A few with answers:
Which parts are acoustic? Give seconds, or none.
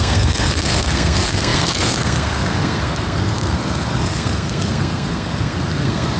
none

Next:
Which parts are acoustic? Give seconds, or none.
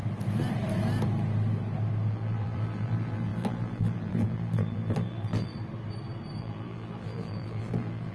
0.0-2.1; 5.5-6.4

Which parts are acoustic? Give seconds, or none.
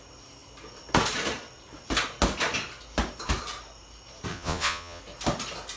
0.0-4.3; 5.0-5.8